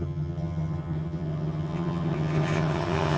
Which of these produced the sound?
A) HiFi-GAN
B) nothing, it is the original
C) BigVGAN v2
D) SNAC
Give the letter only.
A